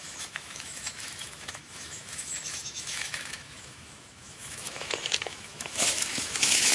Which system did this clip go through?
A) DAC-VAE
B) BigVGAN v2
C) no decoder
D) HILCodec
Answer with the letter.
A